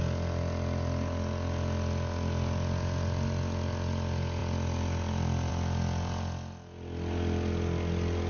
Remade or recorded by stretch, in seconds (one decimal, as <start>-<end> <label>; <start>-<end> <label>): 0.0-8.3 recorded